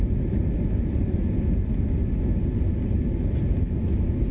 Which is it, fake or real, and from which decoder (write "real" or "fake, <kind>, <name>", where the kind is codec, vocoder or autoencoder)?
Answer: real